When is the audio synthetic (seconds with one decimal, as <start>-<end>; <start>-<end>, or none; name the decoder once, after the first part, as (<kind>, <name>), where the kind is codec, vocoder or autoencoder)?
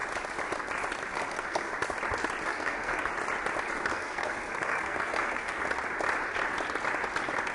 1.1-1.7 (codec, SNAC); 2.5-3.1; 3.9-5.6